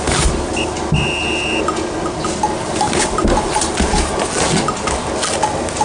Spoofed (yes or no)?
no